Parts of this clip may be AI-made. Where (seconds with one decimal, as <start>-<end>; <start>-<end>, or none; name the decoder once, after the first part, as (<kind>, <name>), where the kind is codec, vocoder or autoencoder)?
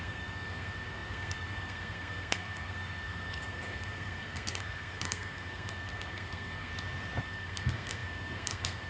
0.0-6.7 (codec, SNAC); 7.2-8.9